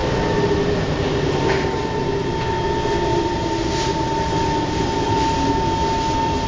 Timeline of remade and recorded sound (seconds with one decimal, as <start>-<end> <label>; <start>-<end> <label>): 0.0-2.0 remade; 2.0-3.1 recorded; 3.1-5.5 remade; 5.5-6.5 recorded